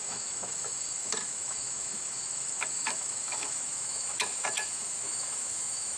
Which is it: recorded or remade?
remade